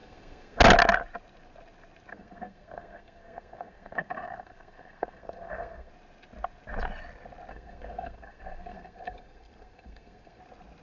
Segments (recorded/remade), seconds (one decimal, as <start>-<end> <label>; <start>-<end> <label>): 0.0-0.6 remade; 0.6-2.1 recorded; 2.1-5.9 remade; 5.9-7.5 recorded; 7.5-10.4 remade; 10.4-10.8 recorded